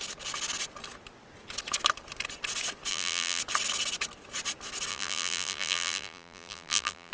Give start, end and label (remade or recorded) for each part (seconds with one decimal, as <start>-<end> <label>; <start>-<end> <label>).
0.0-2.9 recorded; 2.9-3.4 remade; 3.4-4.9 recorded; 4.9-7.1 remade